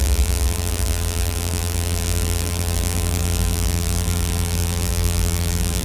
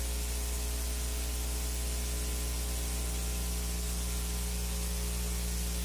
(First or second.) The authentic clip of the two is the second